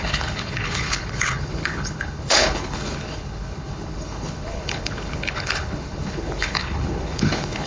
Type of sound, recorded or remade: remade